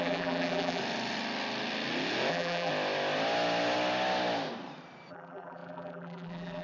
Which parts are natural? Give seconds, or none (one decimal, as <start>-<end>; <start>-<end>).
0.8-2.3; 2.7-5.1